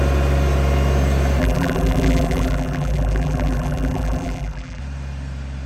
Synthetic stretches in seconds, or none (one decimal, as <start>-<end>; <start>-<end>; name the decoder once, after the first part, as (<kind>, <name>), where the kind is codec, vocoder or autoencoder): 1.4-4.8 (vocoder, BigVGAN v2)